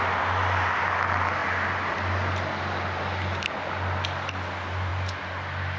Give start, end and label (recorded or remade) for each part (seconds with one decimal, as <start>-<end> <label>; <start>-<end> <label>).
0.0-5.8 recorded